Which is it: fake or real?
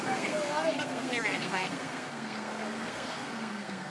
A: fake